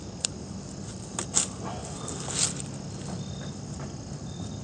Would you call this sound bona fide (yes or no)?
yes